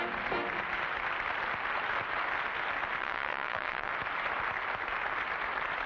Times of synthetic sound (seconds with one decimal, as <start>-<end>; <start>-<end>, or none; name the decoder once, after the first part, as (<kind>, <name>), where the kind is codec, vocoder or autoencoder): 3.0-3.9 (vocoder, WaveNeXt)